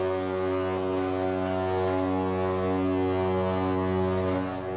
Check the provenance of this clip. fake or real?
real